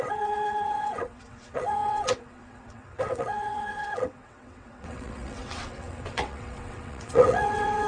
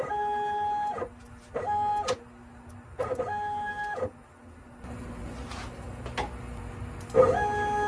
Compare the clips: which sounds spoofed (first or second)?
first